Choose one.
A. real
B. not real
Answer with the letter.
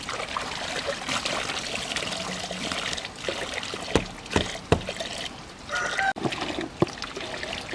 A